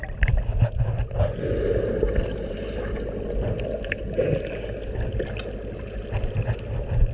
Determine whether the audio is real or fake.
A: real